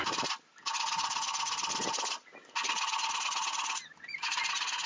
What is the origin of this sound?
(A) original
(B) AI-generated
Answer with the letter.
A